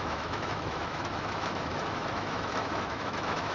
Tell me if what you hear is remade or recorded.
remade